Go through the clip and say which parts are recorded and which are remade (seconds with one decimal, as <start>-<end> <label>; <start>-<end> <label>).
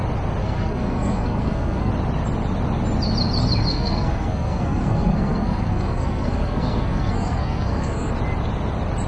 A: 0.0-0.4 recorded; 0.4-1.9 remade; 1.9-3.7 recorded; 3.7-8.1 remade; 8.1-9.1 recorded